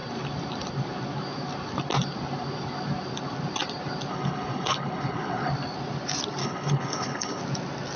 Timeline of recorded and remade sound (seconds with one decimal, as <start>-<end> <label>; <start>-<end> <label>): 0.0-4.1 recorded; 4.1-5.5 remade; 5.5-6.4 recorded; 6.4-7.4 remade; 7.4-8.0 recorded